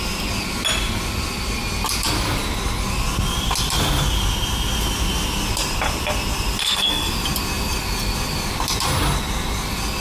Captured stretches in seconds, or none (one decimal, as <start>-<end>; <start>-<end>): 0.0-6.6; 7.1-10.0